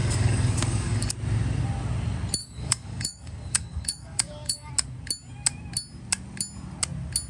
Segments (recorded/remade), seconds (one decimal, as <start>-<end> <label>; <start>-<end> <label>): 0.0-1.1 remade; 1.1-2.4 recorded; 2.4-4.7 remade; 4.7-7.3 recorded